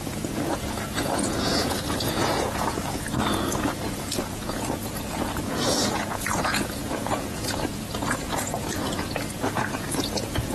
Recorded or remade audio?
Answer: remade